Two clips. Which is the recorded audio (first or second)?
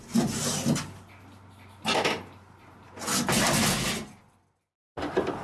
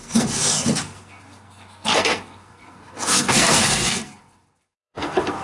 first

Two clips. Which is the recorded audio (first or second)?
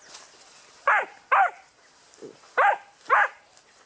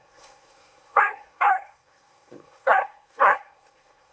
first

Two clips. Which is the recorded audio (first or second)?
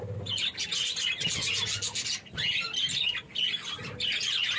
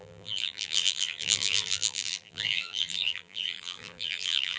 first